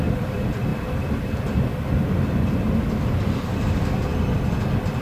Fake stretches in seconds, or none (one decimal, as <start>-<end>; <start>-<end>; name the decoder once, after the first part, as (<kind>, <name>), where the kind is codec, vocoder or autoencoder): none